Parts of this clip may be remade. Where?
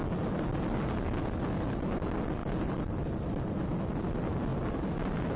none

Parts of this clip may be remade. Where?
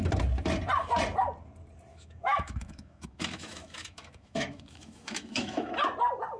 1.9-5.7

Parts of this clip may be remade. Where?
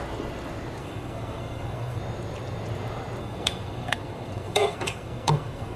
0.8-2.0; 3.2-5.8